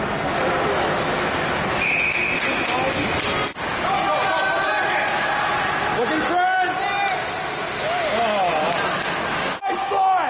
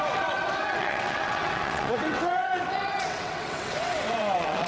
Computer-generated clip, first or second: second